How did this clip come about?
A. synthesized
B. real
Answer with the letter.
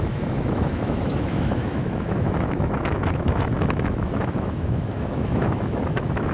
A